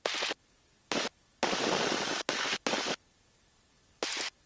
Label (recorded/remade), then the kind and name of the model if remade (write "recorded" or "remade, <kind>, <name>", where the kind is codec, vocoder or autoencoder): recorded